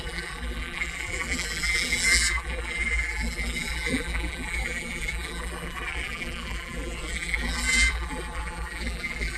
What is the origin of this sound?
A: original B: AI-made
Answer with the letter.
B